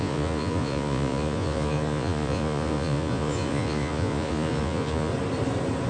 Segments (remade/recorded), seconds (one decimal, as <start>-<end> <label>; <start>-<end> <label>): 0.0-5.1 remade; 5.1-5.9 recorded